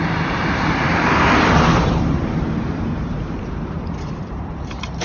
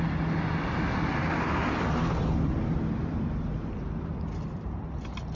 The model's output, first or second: first